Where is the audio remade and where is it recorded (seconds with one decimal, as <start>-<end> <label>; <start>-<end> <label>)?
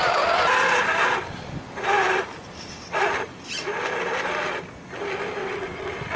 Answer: 0.0-5.4 recorded; 5.4-6.2 remade